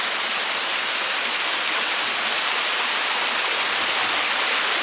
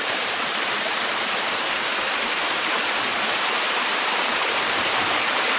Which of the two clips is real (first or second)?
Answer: first